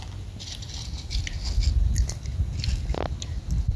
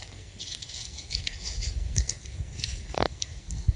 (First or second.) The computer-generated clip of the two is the second